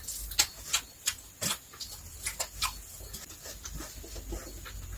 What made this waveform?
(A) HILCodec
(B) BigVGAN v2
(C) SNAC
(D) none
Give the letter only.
D